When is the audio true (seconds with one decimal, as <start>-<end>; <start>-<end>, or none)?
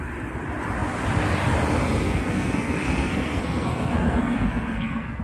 0.0-2.0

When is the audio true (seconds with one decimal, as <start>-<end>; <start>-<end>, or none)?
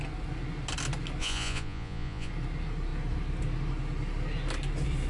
0.0-1.2; 2.3-5.1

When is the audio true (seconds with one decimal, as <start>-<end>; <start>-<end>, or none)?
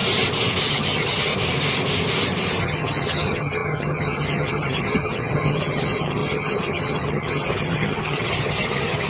0.0-0.6; 1.3-2.6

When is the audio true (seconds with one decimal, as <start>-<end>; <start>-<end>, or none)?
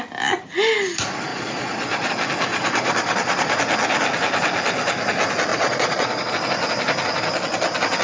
0.0-1.3; 2.1-2.5; 3.6-5.5; 6.3-8.0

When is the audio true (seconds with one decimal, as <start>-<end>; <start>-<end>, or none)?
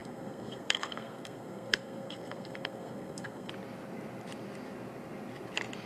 3.5-5.9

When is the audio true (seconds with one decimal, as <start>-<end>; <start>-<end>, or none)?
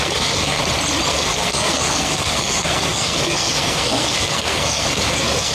0.6-1.1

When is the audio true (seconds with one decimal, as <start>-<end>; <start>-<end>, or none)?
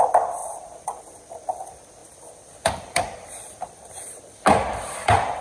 0.0-0.4; 1.1-2.0